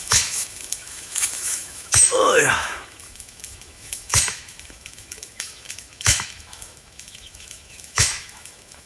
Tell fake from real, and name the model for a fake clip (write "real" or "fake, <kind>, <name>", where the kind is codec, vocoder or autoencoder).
fake, autoencoder, DAC-VAE